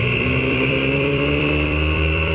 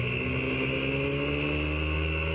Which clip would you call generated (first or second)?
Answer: first